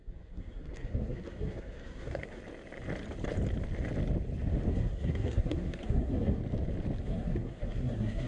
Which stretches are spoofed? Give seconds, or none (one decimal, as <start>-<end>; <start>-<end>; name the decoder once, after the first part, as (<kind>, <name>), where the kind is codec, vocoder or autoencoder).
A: 0.0-2.4 (codec, SNAC); 4.7-6.4; 7.0-8.3